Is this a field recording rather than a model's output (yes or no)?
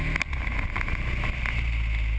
yes